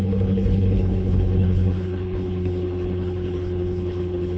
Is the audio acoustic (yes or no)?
no